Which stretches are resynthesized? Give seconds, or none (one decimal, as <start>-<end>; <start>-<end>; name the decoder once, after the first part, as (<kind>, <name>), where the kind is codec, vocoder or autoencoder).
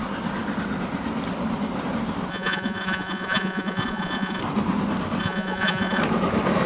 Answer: 2.3-4.4 (vocoder, Vocos); 5.2-6.0